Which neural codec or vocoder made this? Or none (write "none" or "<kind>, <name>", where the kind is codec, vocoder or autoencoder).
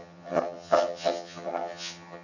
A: vocoder, HiFi-GAN